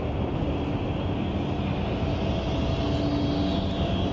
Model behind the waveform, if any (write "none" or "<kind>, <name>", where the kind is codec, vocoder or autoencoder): none